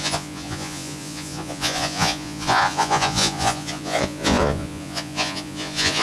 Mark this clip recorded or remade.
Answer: remade